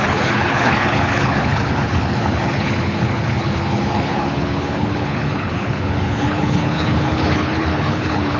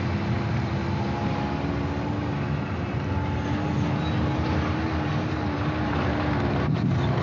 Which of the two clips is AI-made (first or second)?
first